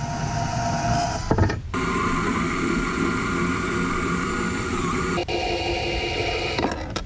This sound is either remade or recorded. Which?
recorded